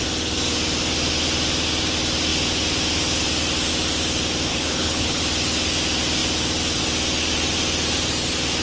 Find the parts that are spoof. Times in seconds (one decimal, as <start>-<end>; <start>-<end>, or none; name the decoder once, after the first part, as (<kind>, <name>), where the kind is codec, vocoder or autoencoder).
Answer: 4.5-5.2 (codec, HILCodec)